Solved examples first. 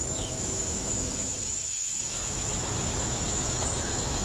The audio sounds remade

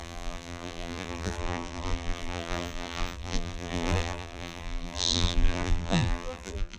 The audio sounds remade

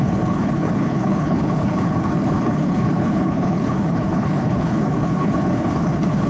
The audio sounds remade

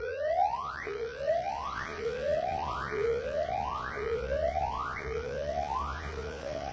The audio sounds remade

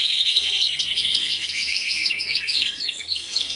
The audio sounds remade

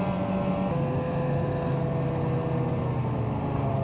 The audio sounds recorded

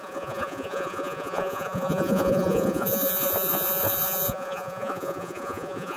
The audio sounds remade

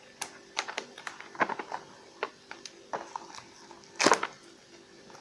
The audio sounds recorded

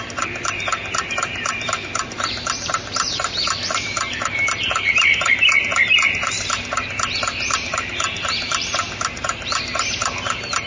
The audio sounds remade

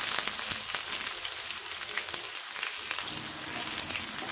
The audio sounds recorded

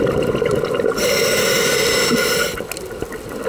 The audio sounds recorded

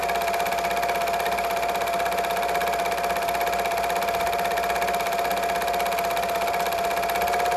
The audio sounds recorded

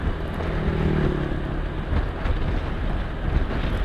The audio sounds recorded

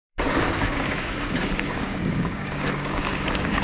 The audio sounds remade